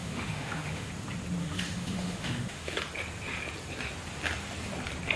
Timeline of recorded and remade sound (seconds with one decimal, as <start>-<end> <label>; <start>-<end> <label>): 0.0-0.9 remade; 0.9-1.4 recorded; 1.4-2.8 remade; 2.8-5.2 recorded